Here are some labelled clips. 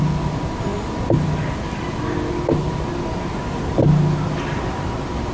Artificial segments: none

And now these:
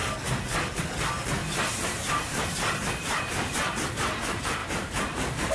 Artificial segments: 1.4-3.9 (vocoder, BigVGAN v2); 4.6-5.5

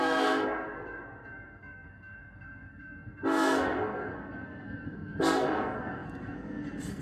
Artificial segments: 0.0-7.0 (codec, SNAC)

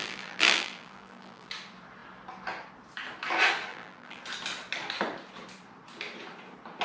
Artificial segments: 0.0-1.5 (vocoder, BigVGAN v2); 3.7-4.2

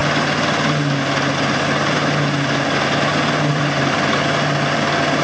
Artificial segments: 3.5-4.1 (vocoder, BigVGAN v2)